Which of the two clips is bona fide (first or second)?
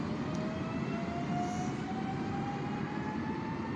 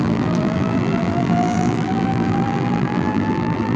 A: first